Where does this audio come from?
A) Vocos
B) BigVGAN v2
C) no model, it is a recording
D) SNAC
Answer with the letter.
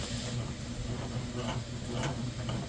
C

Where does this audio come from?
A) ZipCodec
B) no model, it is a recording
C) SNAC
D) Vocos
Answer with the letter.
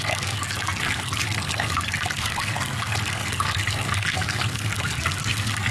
C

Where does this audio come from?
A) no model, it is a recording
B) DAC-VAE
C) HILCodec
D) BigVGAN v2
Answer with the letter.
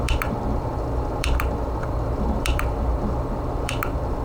D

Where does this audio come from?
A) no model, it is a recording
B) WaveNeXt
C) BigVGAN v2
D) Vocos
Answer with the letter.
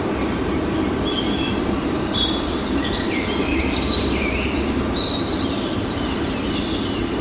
C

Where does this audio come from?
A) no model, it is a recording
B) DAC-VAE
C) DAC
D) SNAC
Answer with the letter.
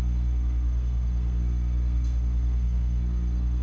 D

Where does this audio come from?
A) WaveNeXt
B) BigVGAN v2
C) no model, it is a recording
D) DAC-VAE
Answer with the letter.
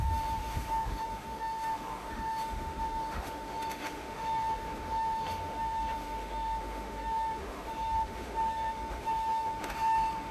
D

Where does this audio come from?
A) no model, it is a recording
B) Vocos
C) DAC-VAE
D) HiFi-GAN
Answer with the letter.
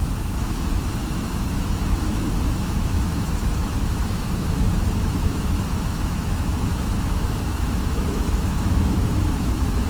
C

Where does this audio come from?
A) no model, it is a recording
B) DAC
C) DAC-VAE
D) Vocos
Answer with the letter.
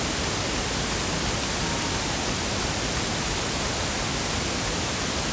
A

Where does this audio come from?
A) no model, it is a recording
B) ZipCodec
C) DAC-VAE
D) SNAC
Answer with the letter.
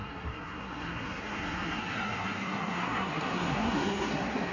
D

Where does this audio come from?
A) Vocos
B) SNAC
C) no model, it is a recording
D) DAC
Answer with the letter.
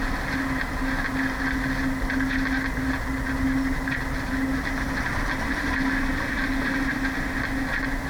C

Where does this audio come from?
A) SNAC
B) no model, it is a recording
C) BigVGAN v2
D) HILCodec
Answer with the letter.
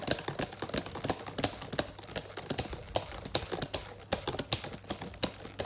B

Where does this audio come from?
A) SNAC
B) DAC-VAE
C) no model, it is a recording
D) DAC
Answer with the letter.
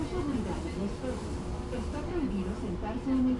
C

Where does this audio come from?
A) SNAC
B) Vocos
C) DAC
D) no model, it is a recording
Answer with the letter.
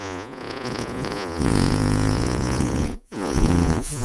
B